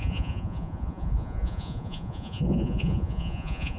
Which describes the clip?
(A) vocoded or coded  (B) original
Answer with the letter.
A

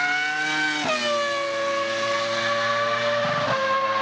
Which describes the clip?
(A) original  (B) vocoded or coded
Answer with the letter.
A